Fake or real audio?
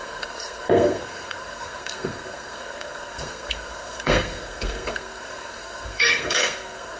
fake